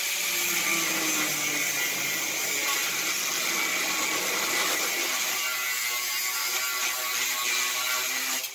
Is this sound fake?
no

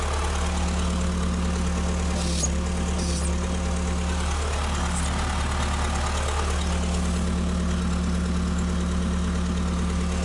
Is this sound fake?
no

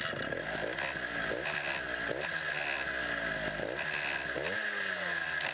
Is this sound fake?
no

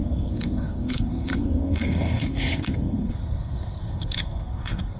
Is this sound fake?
yes